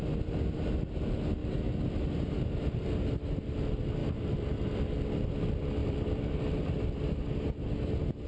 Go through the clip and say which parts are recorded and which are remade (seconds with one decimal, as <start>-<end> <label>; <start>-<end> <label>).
0.0-4.0 recorded; 4.0-5.3 remade; 5.3-5.8 recorded; 5.8-7.2 remade; 7.2-8.3 recorded